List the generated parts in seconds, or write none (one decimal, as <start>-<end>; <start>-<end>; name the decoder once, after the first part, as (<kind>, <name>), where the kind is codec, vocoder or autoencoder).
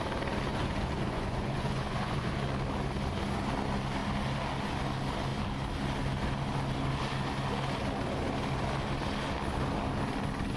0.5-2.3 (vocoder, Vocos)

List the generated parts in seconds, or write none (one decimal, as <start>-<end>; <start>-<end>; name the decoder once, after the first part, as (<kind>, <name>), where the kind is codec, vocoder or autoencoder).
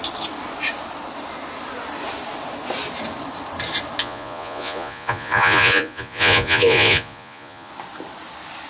4.0-7.7 (vocoder, Vocos)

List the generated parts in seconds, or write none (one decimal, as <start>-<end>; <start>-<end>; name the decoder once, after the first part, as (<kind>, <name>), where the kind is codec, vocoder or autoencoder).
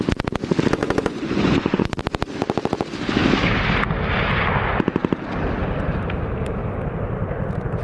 0.8-2.0 (vocoder, Vocos)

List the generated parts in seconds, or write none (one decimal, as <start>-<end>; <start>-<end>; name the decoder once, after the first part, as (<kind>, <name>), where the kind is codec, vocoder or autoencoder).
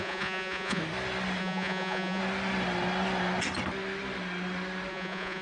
0.0-0.8 (vocoder, Vocos); 1.4-2.2; 4.9-5.4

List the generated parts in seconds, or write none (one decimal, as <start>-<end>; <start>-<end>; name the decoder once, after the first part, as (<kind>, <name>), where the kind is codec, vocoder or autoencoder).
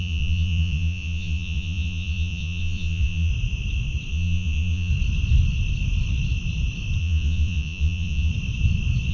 0.0-3.3 (vocoder, Vocos); 4.1-4.9; 7.0-8.3